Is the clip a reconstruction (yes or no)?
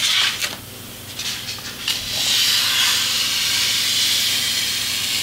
no